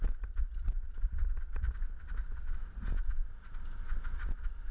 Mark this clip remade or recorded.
recorded